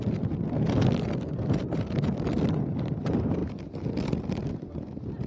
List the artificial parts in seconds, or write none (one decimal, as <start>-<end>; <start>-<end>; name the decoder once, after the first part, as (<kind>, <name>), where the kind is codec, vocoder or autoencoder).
none